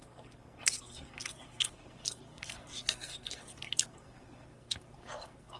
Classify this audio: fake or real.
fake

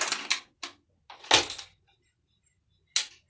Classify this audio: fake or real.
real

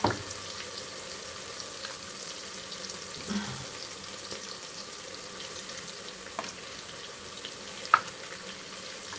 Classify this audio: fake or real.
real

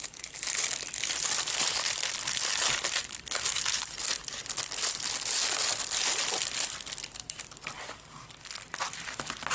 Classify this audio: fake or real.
fake